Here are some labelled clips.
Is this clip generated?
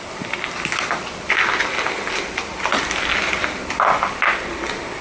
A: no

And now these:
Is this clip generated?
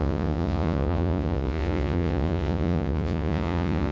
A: yes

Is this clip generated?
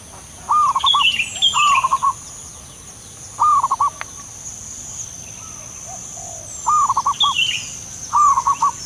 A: no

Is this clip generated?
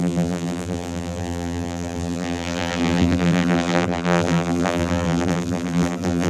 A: yes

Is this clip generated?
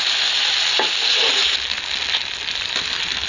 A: no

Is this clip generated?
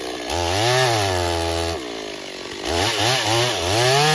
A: no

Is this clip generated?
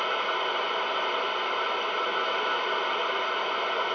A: no